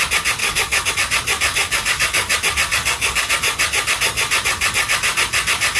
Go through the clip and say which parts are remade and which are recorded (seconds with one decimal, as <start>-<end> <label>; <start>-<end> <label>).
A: 0.0-0.4 recorded; 0.4-0.9 remade; 0.9-1.5 recorded; 1.5-2.3 remade; 2.3-2.7 recorded; 2.7-3.3 remade; 3.3-5.8 recorded